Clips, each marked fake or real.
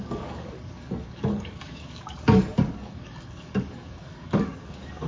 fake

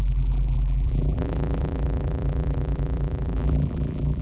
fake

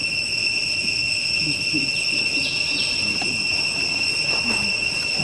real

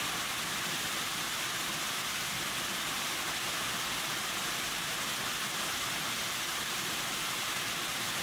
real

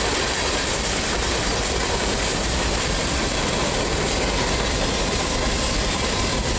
real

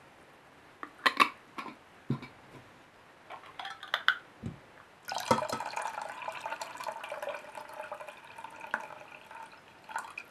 real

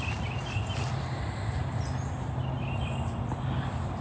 real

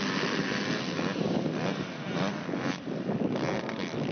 real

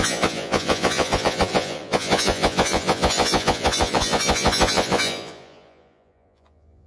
fake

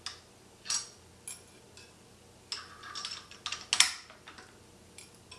real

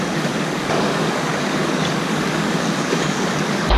fake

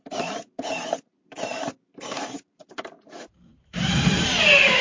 fake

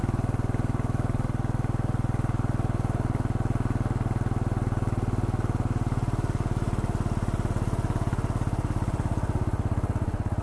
real